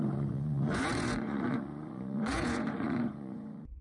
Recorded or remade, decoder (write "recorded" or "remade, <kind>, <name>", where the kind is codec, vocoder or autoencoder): remade, vocoder, Vocos